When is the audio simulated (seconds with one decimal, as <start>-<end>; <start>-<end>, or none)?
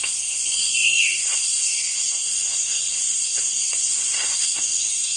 0.0-5.2